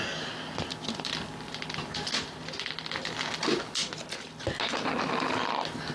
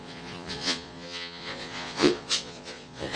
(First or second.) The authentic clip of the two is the first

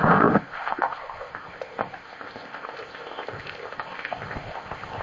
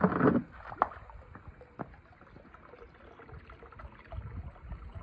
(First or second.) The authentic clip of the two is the second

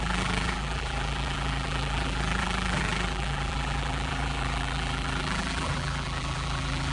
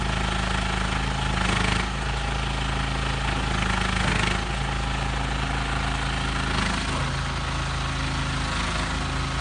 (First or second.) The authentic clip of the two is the second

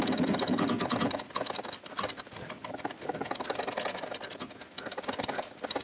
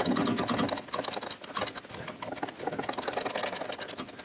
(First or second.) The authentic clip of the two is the second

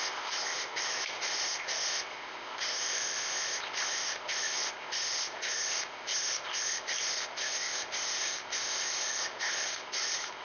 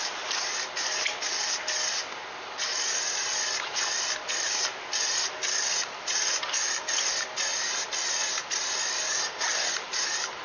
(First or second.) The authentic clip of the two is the second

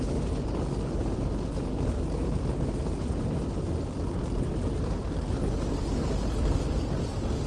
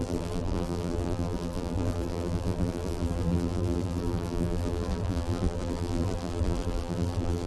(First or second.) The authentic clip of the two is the first